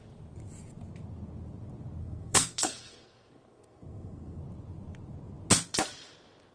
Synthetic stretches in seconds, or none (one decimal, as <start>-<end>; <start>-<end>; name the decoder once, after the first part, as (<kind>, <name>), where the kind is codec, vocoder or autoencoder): 2.0-4.4 (codec, SNAC)